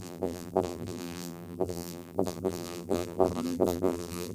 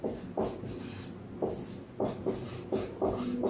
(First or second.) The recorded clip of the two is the second